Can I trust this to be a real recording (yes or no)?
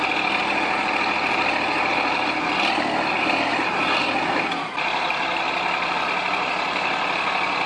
yes